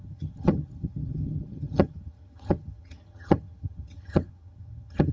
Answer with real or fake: fake